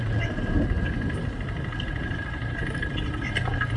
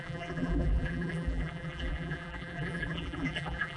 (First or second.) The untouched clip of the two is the first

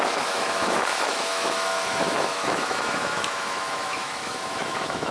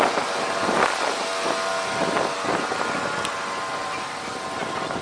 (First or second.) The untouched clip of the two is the second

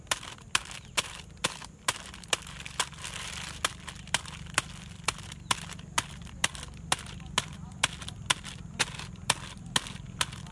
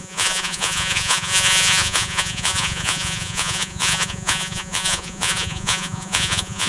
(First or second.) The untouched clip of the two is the first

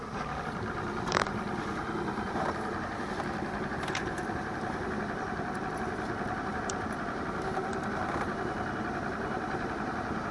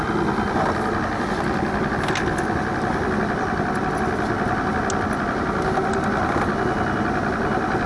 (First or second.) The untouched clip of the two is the second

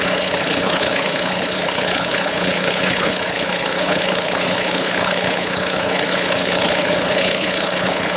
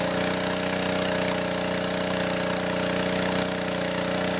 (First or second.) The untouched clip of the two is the second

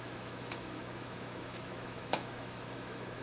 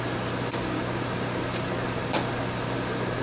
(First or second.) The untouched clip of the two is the second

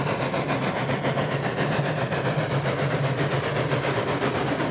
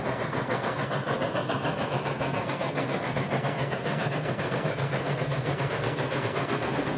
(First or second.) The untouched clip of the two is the first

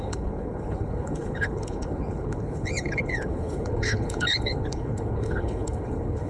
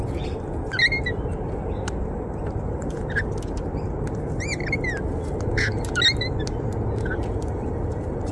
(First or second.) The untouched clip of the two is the second